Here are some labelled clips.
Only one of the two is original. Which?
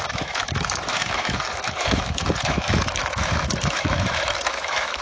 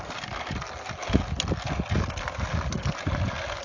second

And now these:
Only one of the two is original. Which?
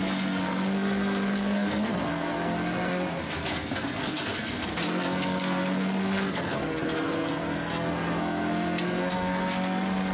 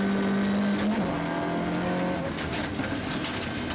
second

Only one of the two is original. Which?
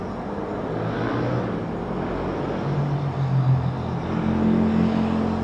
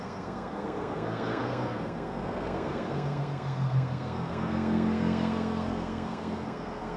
first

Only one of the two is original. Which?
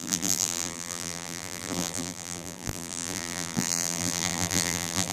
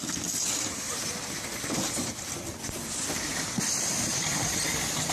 second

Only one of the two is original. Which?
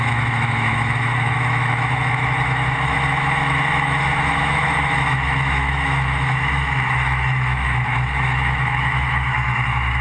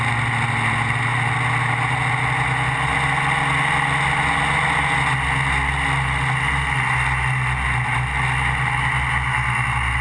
second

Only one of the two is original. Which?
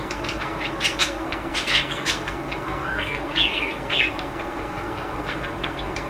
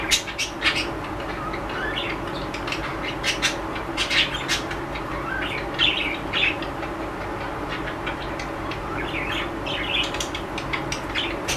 second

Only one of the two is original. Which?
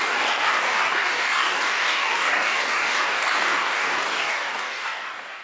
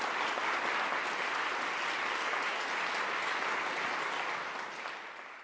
second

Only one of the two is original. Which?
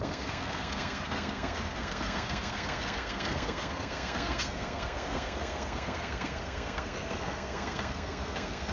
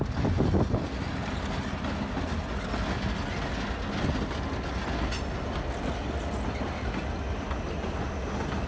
second